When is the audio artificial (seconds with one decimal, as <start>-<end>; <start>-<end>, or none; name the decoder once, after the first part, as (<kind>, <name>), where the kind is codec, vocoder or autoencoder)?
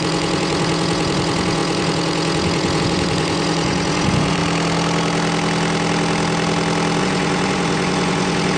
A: 0.0-4.4 (vocoder, Vocos); 7.0-8.6